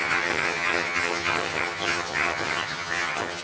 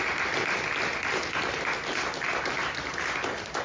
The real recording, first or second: second